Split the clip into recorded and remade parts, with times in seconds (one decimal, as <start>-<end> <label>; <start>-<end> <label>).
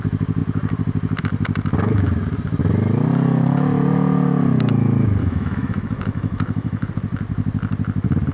0.0-5.2 recorded; 5.2-6.9 remade; 6.9-8.3 recorded